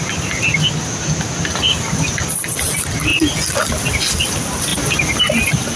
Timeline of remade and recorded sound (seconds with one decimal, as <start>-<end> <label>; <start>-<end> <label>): 0.0-0.5 remade; 0.5-1.3 recorded; 1.3-3.1 remade; 3.1-3.7 recorded; 3.7-4.7 remade; 4.7-5.2 recorded; 5.2-5.8 remade